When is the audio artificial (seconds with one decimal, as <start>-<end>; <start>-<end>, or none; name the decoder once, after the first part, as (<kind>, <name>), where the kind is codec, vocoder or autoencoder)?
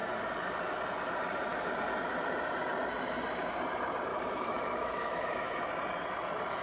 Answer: 4.1-5.7 (autoencoder, DAC-VAE)